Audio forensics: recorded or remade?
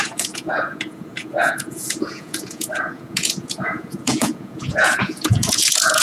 remade